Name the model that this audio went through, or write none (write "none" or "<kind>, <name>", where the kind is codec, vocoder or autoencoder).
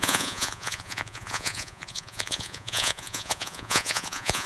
vocoder, Vocos